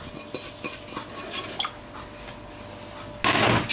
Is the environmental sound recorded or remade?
recorded